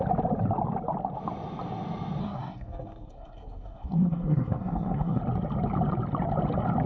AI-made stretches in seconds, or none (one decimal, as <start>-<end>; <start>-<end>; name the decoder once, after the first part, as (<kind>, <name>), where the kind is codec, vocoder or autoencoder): 2.2-5.2 (codec, SNAC)

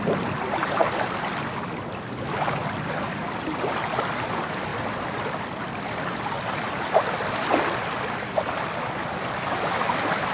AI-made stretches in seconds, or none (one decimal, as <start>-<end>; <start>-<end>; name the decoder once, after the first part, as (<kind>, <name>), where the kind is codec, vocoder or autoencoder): none

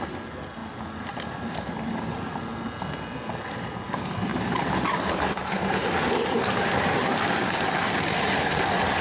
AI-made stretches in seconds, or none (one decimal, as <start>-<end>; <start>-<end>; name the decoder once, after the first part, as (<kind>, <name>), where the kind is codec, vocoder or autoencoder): 4.3-6.1 (vocoder, BigVGAN v2)

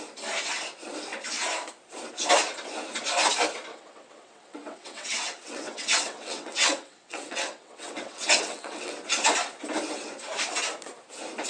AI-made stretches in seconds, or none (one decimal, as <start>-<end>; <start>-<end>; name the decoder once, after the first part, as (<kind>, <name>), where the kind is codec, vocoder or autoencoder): 3.7-8.9 (vocoder, WaveNeXt)

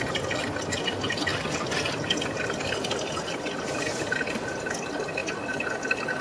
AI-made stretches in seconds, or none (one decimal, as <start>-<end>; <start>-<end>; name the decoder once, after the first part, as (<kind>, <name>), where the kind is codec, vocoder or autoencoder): none